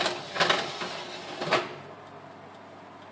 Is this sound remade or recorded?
recorded